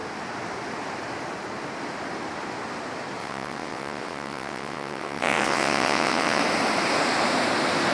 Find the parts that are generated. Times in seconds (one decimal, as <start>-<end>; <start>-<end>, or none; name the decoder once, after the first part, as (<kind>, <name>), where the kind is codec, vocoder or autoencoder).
3.2-6.4 (vocoder, WaveNeXt)